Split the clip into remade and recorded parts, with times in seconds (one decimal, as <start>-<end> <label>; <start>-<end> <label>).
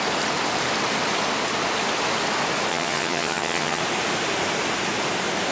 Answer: 0.0-2.7 recorded; 2.7-3.8 remade; 3.8-5.5 recorded